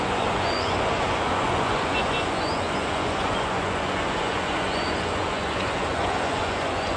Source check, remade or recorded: remade